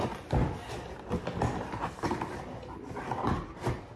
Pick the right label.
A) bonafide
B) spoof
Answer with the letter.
A